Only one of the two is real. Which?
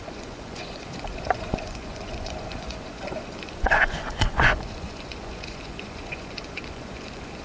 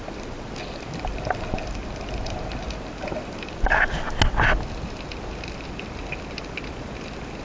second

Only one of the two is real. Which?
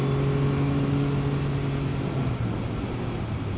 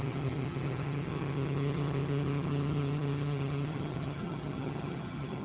first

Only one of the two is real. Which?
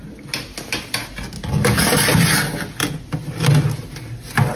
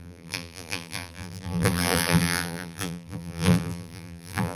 first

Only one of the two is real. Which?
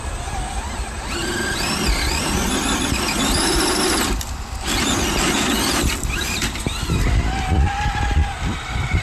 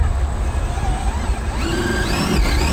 second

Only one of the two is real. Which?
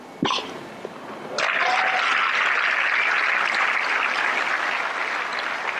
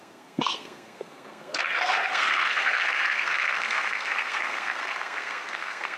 first